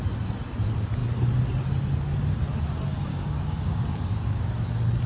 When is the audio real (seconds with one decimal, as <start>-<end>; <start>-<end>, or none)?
0.0-3.1; 4.5-5.1

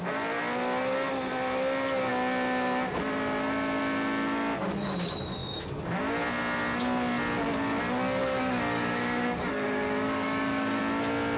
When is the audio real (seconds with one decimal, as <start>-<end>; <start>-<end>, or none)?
0.0-8.2; 10.8-11.4

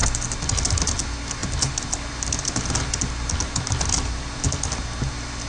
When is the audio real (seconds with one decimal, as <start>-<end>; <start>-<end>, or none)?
0.0-5.5

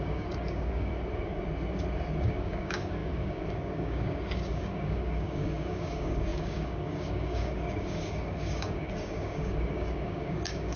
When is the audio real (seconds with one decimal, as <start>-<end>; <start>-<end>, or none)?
0.9-2.2

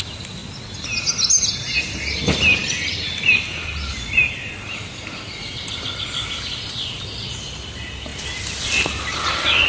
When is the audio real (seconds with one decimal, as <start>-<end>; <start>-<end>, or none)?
0.0-9.7

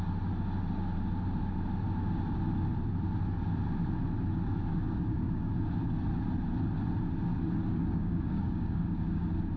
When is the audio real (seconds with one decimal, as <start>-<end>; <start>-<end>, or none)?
0.0-4.7; 5.5-7.7; 9.2-9.6

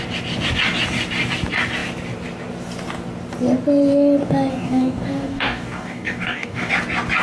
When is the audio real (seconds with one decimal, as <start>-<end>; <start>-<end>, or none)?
0.0-4.5; 6.7-7.2

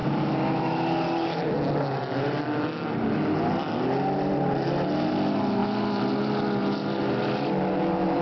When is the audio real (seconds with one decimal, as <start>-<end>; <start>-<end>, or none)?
0.0-8.2